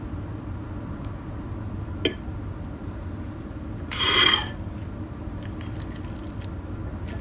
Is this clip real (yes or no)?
yes